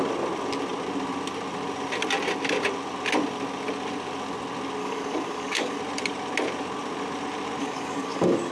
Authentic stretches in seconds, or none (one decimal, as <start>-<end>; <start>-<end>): 0.0-4.8; 5.8-7.6